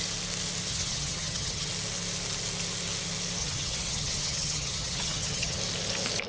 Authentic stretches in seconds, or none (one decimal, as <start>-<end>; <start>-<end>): 0.0-0.7; 1.7-3.4; 5.6-6.3